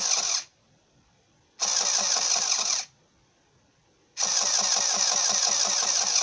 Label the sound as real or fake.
real